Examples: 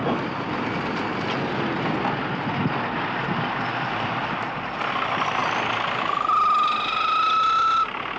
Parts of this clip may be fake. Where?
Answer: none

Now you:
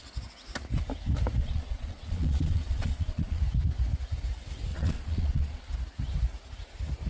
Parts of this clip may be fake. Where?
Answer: 1.4-3.4; 4.7-5.6

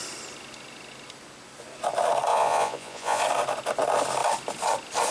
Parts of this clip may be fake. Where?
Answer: 2.3-3.2